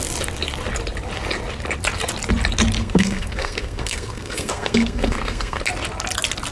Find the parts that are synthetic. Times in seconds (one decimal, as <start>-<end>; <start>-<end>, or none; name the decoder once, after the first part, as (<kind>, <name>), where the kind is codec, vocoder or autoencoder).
2.8-5.6 (codec, SNAC)